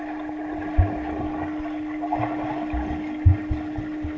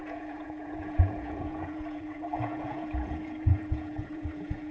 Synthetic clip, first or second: second